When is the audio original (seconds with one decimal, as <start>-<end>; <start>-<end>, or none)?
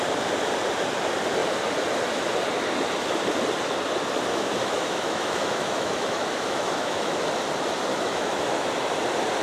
0.0-4.3; 7.2-7.9; 8.7-9.4